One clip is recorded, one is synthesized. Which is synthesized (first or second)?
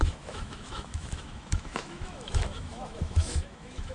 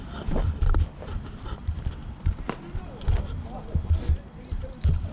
first